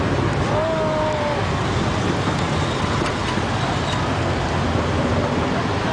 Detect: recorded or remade recorded